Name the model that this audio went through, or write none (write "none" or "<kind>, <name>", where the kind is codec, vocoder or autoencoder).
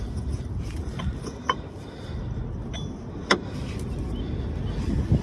none